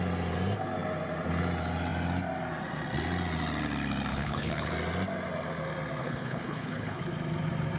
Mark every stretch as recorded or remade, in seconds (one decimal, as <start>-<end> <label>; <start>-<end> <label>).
0.0-4.1 recorded; 4.1-4.7 remade; 4.7-6.0 recorded; 6.0-7.0 remade; 7.0-7.8 recorded